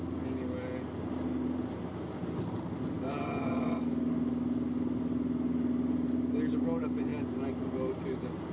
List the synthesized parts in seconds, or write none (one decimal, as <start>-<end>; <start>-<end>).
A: none